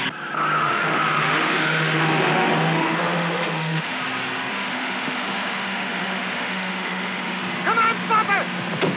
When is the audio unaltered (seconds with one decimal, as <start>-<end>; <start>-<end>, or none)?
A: 0.0-0.6; 4.0-4.5; 7.4-9.0